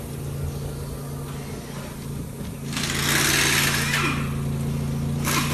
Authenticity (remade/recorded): recorded